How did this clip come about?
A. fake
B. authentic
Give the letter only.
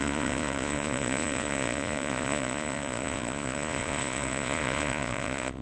A